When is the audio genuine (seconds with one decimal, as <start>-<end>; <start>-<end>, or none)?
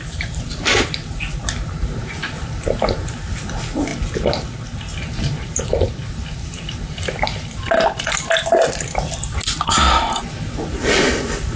0.0-11.6